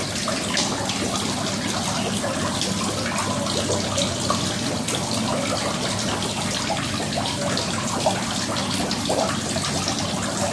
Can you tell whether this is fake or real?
real